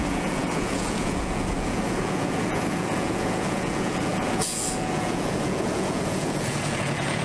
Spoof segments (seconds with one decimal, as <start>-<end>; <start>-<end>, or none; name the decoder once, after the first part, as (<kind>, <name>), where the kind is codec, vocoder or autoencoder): 0.0-7.2 (vocoder, Vocos)